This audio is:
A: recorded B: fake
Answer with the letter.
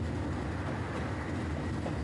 A